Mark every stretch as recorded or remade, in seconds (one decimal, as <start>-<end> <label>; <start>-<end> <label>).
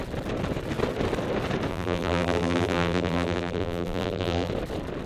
0.0-1.7 recorded; 1.7-4.5 remade; 4.5-5.1 recorded